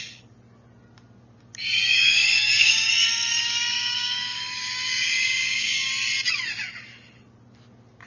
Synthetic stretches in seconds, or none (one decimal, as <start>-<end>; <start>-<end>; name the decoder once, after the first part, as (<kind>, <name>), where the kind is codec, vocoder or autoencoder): 1.9-2.9 (codec, DAC); 3.3-5.9